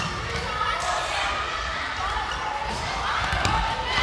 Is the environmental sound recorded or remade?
recorded